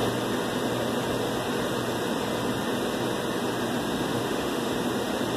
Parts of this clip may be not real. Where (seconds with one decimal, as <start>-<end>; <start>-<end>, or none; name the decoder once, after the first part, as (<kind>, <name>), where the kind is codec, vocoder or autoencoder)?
4.1-4.7 (autoencoder, DAC-VAE)